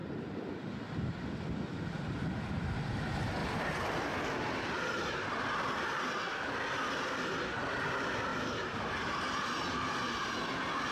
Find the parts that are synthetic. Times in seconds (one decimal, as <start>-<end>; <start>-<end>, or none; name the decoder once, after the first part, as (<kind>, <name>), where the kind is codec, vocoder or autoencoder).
0.0-1.3 (vocoder, BigVGAN v2); 3.4-4.8; 8.3-9.6